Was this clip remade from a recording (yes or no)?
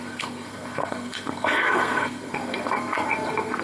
yes